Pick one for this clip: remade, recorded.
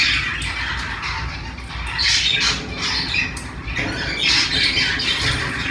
recorded